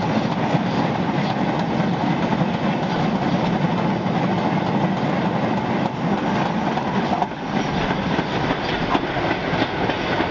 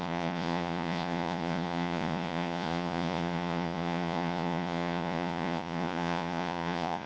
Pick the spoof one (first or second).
second